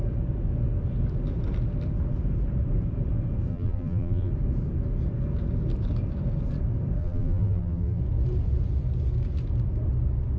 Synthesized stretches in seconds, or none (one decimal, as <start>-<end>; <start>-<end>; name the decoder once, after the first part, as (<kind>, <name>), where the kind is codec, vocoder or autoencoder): 3.5-4.3 (vocoder, BigVGAN v2); 7.0-8.0